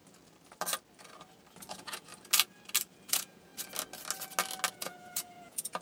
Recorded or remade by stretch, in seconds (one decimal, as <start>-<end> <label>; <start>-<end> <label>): 0.0-1.7 recorded; 1.7-2.1 remade; 2.1-3.1 recorded; 3.1-3.5 remade; 3.5-4.7 recorded; 4.7-5.8 remade